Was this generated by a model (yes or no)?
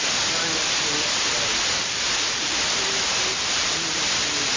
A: no